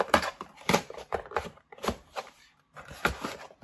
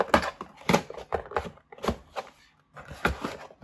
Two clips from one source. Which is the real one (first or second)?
second